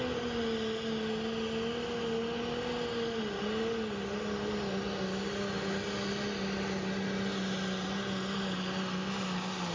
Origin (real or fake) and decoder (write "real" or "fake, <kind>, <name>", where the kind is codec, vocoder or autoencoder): real